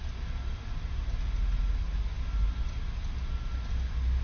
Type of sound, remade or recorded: recorded